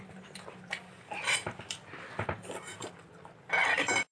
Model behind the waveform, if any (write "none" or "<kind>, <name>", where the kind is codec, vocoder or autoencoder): vocoder, BigVGAN v2